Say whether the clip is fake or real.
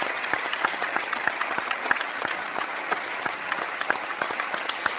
fake